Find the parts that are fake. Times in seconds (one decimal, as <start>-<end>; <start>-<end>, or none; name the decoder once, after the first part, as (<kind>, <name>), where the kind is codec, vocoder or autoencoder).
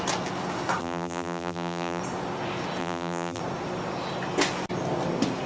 0.8-2.0 (vocoder, BigVGAN v2); 2.8-3.4